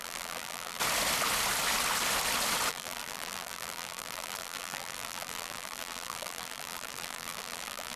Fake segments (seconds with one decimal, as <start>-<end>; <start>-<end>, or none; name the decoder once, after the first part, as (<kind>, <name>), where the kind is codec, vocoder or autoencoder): 0.0-0.8 (vocoder, BigVGAN v2); 2.7-8.0